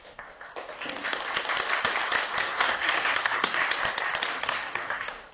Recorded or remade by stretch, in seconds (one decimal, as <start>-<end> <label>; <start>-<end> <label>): 0.0-0.5 remade; 0.5-2.4 recorded; 2.4-3.6 remade; 3.6-4.4 recorded; 4.4-5.3 remade